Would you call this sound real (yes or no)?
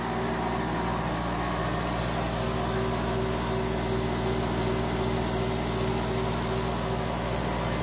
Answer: yes